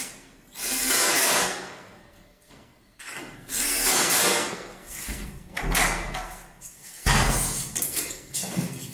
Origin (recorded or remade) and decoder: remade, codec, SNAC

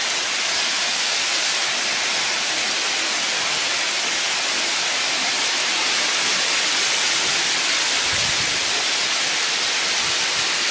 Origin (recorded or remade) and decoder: recorded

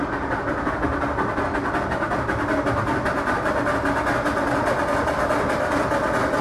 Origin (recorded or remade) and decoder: recorded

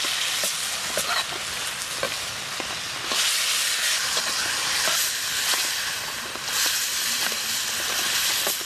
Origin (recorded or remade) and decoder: recorded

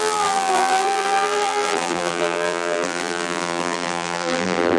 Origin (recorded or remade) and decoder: remade, vocoder, BigVGAN v2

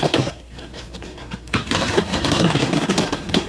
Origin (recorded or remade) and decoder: remade, codec, SNAC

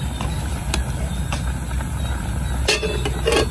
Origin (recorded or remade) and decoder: recorded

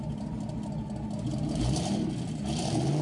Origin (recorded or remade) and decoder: recorded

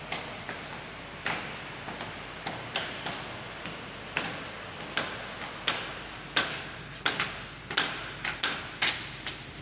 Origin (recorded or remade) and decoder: recorded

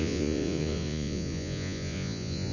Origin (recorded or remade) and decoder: remade, vocoder, Vocos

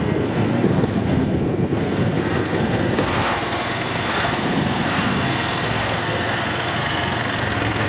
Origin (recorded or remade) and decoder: remade, codec, SNAC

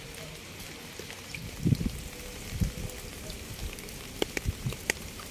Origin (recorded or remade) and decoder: recorded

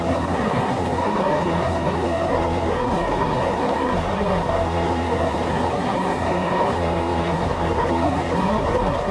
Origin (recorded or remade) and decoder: remade, codec, SNAC